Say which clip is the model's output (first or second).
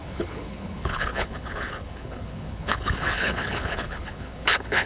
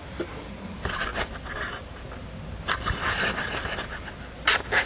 first